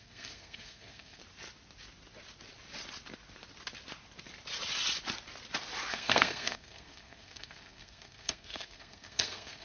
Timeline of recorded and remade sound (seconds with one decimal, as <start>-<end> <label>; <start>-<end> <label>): 0.0-1.2 remade; 1.2-5.9 recorded; 5.9-9.6 remade